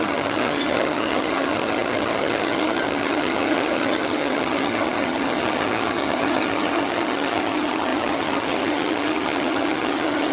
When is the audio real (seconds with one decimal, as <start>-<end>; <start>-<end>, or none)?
none